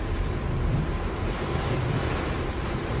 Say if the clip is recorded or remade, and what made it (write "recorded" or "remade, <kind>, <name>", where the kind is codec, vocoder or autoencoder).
recorded